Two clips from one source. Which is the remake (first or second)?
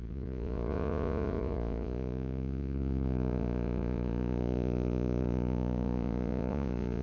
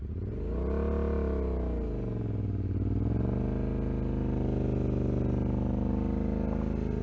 first